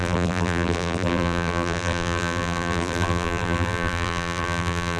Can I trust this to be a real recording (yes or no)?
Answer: no